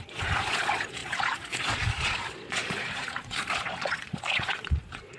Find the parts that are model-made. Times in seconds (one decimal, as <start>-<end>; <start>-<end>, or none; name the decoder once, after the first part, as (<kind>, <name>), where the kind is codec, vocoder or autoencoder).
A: 0.0-5.2 (vocoder, Vocos)